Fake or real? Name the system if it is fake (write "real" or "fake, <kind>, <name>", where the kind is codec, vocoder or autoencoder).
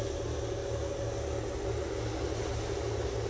real